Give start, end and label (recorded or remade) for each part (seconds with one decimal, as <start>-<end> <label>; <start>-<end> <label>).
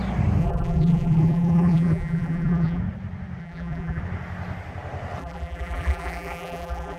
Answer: 0.0-0.4 recorded; 0.4-2.8 remade; 2.8-3.4 recorded; 3.4-4.0 remade; 4.0-5.2 recorded; 5.2-7.0 remade